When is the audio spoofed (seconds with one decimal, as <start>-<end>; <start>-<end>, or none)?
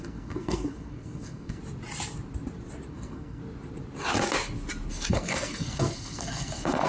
0.0-1.6; 2.9-3.4; 4.9-6.9